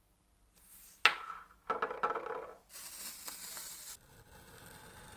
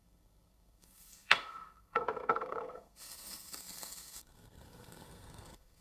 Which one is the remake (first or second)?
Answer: second